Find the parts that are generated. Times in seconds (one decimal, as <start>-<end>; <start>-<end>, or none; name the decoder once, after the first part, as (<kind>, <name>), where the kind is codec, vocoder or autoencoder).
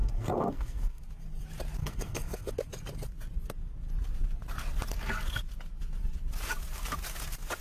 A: 0.0-1.0 (codec, SNAC); 1.8-2.5